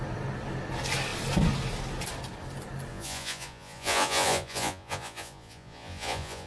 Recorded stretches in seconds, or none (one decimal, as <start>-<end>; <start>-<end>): 0.0-2.9